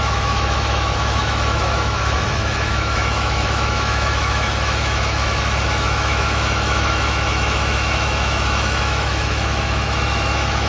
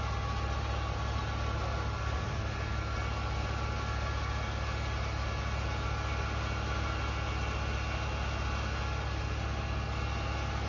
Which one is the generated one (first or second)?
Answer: first